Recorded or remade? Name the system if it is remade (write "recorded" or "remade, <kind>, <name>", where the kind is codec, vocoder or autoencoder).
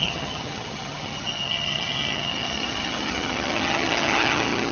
remade, vocoder, HiFi-GAN